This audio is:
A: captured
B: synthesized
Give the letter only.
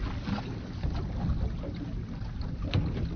A